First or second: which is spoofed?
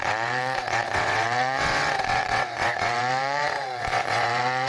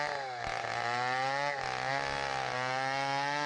first